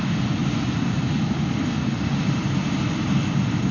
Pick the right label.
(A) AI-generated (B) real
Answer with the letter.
B